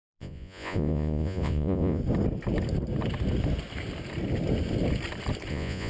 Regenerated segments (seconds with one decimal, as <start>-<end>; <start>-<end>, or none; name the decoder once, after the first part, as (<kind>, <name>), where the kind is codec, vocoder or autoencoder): 0.0-2.0 (vocoder, Vocos); 5.5-5.9